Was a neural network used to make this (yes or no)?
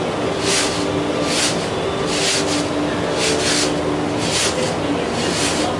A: no